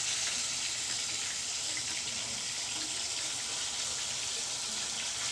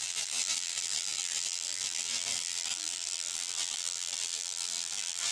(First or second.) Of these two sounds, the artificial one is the second